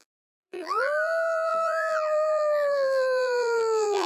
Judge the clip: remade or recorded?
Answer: remade